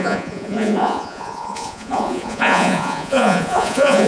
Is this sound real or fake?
fake